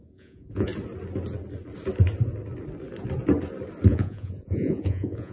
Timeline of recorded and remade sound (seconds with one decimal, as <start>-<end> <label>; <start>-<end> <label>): 0.0-0.7 remade; 0.7-3.9 recorded; 3.9-5.3 remade